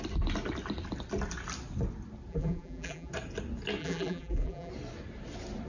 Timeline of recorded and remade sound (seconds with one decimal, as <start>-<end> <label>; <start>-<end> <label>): 0.0-2.3 recorded; 2.3-3.1 remade; 3.1-3.8 recorded; 3.8-4.7 remade; 4.7-5.7 recorded